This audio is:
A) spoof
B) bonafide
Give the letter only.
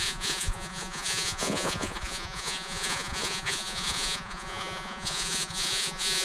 A